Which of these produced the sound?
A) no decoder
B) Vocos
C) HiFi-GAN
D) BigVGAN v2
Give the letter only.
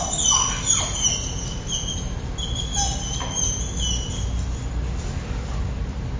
A